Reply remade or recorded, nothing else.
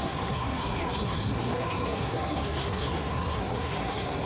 remade